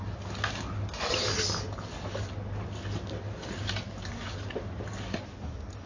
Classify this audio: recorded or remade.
recorded